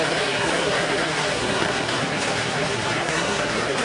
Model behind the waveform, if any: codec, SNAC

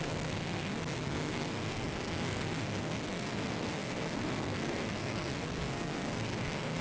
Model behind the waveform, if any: codec, SNAC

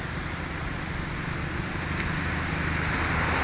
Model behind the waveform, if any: none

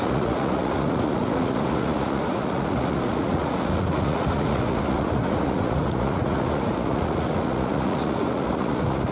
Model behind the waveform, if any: vocoder, Vocos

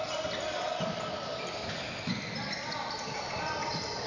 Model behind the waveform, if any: none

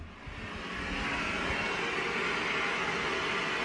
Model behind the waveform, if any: none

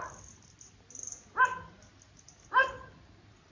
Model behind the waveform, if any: none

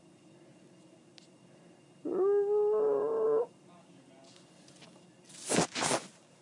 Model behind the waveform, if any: none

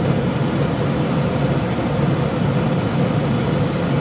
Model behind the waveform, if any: none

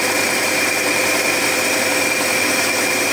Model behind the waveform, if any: none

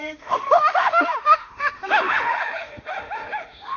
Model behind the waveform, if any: autoencoder, DAC-VAE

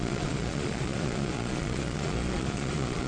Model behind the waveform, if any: vocoder, Vocos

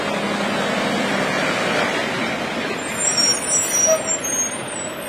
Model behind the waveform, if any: none